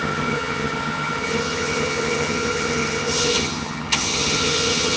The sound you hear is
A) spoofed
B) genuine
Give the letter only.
A